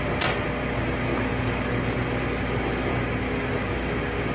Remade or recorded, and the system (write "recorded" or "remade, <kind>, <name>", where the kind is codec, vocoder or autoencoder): recorded